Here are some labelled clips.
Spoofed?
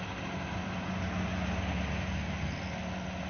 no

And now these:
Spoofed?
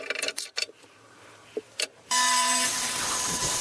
yes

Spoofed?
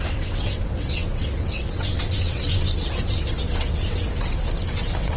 yes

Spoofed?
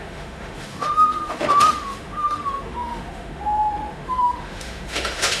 yes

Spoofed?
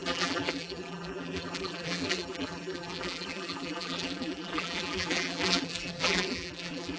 yes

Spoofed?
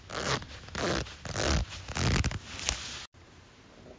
no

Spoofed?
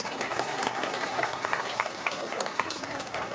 yes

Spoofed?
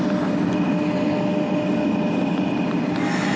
no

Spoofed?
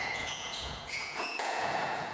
yes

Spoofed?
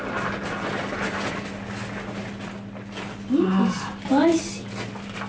no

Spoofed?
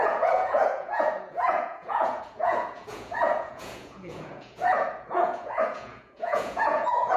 yes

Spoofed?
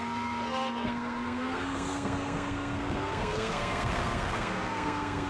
yes